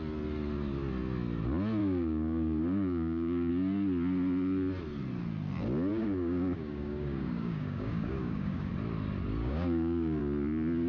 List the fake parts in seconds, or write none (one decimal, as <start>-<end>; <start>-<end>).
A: 1.8-3.5; 5.9-8.7; 9.4-10.2